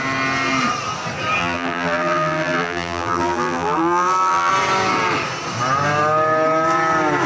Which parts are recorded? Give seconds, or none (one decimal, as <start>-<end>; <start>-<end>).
0.0-1.4; 4.5-7.3